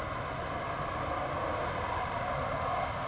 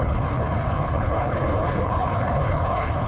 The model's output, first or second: second